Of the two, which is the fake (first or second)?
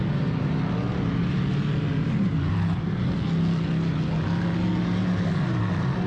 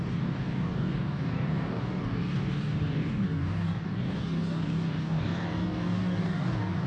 second